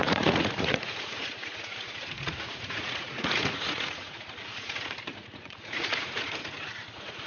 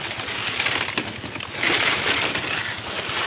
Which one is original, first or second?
second